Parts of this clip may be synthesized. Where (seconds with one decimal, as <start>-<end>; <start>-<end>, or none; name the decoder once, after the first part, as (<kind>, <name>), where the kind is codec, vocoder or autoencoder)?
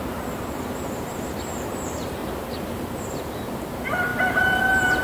0.0-2.2 (vocoder, BigVGAN v2); 3.6-5.0